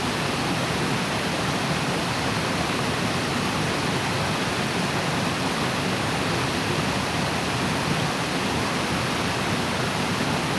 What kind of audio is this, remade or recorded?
recorded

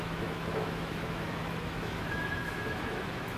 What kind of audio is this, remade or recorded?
remade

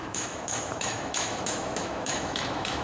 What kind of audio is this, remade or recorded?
remade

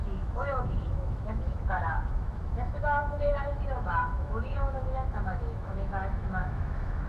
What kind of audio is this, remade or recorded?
remade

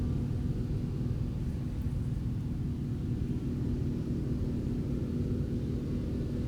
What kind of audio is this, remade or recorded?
recorded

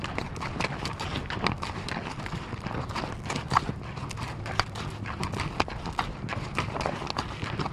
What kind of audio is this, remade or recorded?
recorded